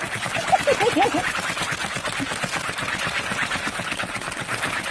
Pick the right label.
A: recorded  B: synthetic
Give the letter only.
A